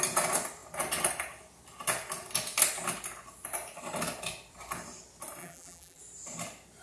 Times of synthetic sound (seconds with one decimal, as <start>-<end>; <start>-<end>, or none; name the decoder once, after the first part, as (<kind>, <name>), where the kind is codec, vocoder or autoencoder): 5.4-6.0 (vocoder, BigVGAN v2)